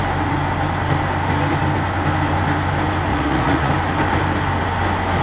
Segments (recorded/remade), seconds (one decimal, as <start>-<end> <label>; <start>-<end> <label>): 0.0-3.1 recorded; 3.1-3.7 remade; 3.7-5.2 recorded